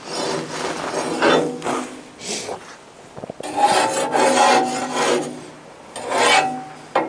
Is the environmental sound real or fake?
real